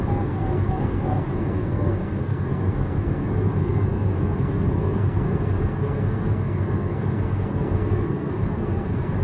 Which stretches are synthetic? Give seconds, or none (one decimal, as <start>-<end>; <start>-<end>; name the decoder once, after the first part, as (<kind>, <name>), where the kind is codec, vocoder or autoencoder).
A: 0.0-9.2 (codec, SNAC)